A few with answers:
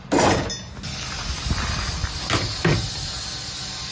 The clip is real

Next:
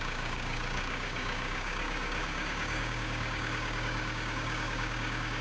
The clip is fake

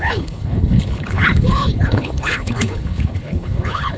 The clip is fake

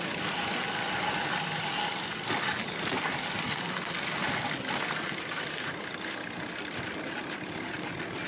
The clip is real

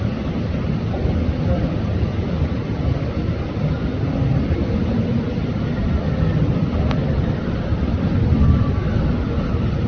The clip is real